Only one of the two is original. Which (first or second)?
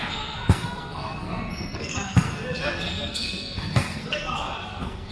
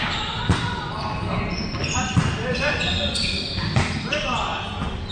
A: second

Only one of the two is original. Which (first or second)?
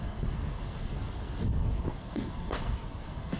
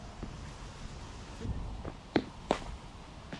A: second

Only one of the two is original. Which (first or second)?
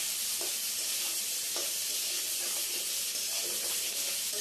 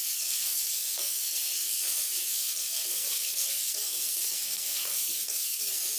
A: first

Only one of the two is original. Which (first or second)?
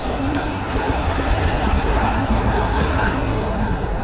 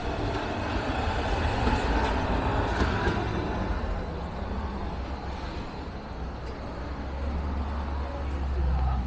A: second